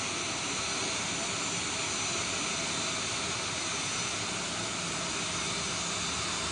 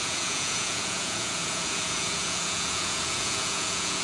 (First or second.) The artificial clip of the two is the second